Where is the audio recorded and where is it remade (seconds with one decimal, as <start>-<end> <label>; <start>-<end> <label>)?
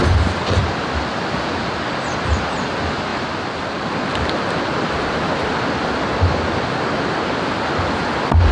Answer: 0.0-8.5 recorded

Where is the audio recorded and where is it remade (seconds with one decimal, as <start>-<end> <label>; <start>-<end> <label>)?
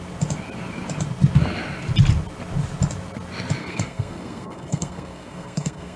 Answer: 0.0-3.6 recorded; 3.6-6.0 remade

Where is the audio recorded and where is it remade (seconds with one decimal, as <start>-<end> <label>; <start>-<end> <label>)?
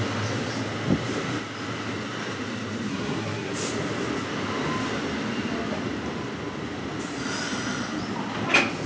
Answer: 0.0-2.9 recorded; 2.9-3.5 remade; 3.5-8.9 recorded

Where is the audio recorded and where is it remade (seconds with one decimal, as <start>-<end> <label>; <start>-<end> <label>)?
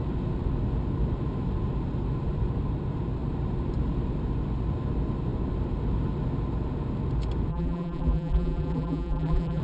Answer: 0.0-7.5 recorded; 7.5-9.6 remade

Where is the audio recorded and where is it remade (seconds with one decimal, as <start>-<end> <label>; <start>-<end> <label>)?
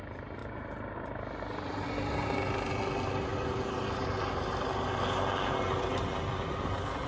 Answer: 0.0-3.3 recorded; 3.3-4.2 remade; 4.2-7.1 recorded